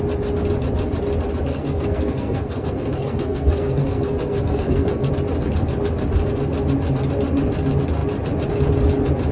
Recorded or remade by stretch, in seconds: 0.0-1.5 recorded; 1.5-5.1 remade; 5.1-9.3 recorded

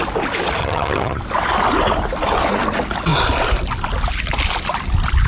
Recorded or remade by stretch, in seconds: 0.0-0.6 recorded; 0.6-1.2 remade; 1.2-5.3 recorded

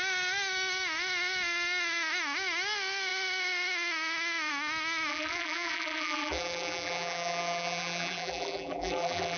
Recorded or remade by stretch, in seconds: 0.0-5.1 recorded; 5.1-9.4 remade

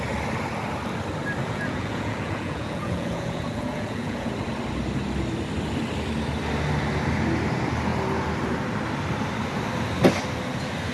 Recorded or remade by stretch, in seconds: 0.0-1.4 recorded; 1.4-4.3 remade; 4.3-10.9 recorded

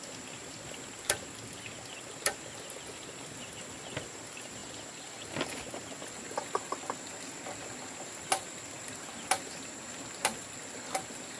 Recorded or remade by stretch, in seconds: 0.0-11.4 recorded

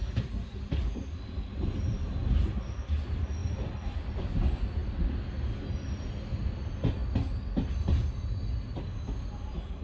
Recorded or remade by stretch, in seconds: 0.0-9.8 recorded

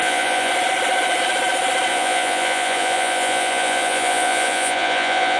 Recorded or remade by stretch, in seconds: 0.0-0.5 remade; 0.5-1.9 recorded; 1.9-5.4 remade

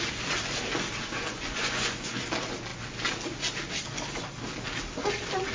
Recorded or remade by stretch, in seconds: 0.0-1.3 recorded; 1.3-2.2 remade; 2.2-5.5 recorded